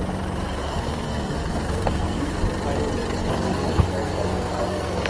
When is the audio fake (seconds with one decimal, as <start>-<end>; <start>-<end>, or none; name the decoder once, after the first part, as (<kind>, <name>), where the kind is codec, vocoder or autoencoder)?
0.6-2.4 (codec, SNAC); 3.2-5.1